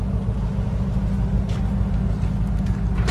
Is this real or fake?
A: real